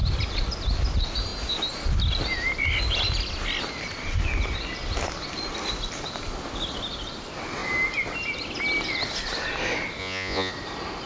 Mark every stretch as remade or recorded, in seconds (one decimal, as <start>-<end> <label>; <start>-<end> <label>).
0.0-10.0 recorded; 10.0-10.5 remade; 10.5-11.1 recorded